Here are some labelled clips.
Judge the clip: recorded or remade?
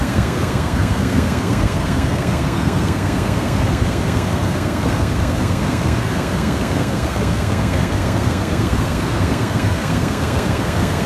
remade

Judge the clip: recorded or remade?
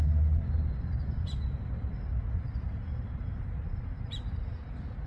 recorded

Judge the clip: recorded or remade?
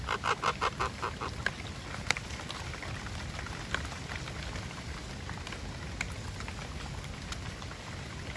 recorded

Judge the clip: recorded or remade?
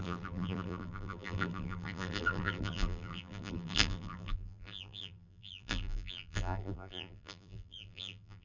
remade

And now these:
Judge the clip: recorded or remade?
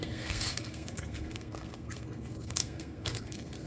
remade